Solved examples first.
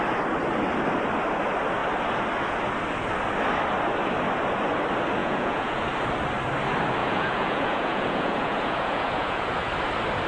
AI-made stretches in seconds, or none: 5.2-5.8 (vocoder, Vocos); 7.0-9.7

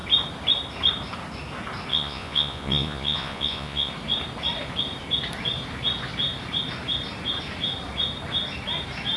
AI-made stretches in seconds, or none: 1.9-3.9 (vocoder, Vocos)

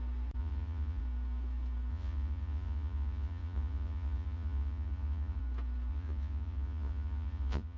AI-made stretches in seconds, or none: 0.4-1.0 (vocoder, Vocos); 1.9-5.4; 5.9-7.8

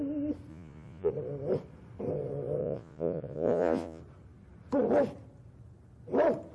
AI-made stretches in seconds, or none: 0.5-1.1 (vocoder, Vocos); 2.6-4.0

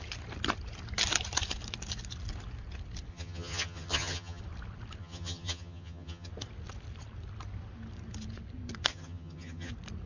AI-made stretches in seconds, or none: 3.1-4.4 (vocoder, HiFi-GAN); 5.0-6.3; 8.9-9.7